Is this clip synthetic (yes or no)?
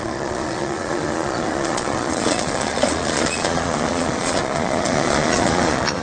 yes